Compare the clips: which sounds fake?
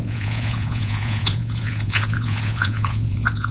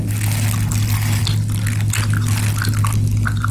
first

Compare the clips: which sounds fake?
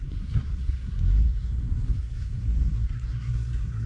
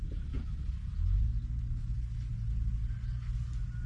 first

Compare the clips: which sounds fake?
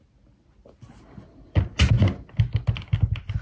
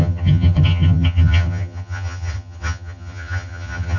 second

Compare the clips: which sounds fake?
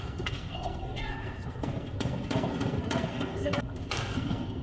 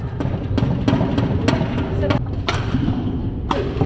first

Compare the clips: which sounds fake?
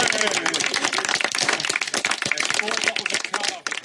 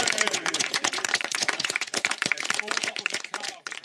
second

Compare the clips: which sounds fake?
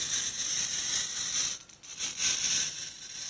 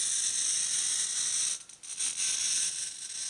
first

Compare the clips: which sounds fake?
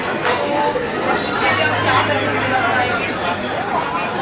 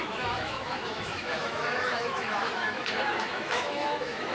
second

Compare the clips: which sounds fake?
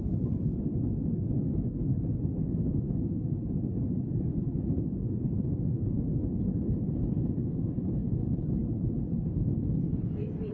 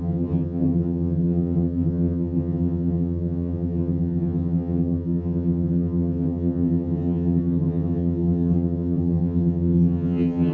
second